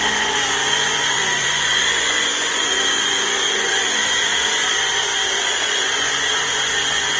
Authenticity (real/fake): fake